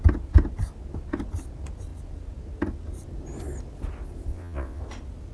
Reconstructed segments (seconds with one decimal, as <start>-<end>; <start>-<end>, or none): 4.3-4.8